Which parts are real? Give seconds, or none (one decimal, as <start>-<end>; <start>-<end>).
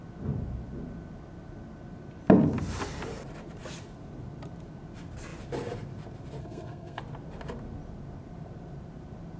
0.0-6.4; 7.0-9.4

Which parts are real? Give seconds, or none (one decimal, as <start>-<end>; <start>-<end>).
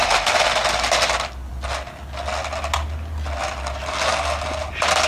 0.0-5.1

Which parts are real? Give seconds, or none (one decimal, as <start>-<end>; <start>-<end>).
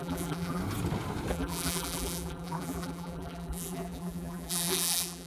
0.6-1.3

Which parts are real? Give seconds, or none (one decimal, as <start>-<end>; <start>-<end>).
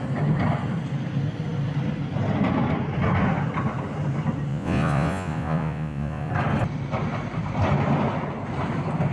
0.0-4.5; 6.3-9.1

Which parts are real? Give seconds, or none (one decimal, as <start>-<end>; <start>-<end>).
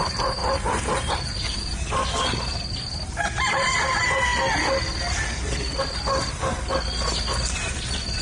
0.4-1.1; 2.0-3.5; 4.3-8.2